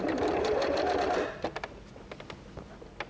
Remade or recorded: recorded